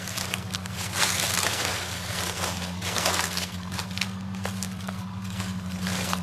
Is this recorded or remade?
remade